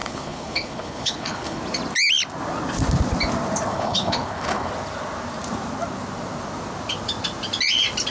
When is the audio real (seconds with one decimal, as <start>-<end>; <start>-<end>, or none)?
1.6-3.7; 4.7-8.1